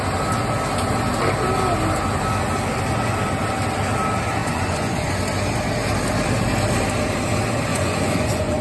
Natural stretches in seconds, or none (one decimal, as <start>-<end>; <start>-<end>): 0.0-4.4; 5.2-7.7